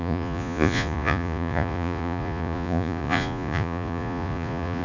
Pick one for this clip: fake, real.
fake